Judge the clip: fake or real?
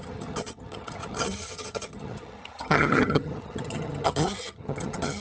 fake